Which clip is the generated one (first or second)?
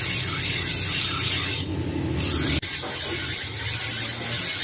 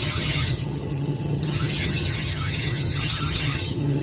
second